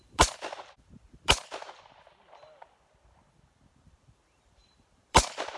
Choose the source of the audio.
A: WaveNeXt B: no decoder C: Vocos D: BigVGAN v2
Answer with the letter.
D